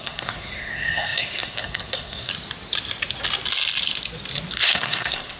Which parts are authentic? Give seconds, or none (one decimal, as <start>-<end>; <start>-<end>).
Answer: 2.3-4.5